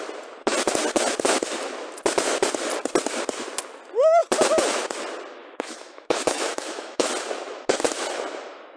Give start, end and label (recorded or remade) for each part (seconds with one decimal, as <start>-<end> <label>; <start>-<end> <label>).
0.0-5.4 recorded; 5.4-7.1 remade; 7.1-8.8 recorded